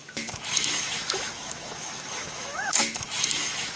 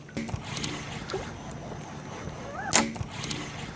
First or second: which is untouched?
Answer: second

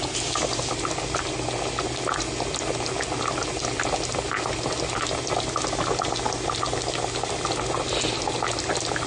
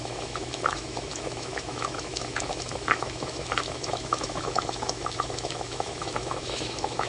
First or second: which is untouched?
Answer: first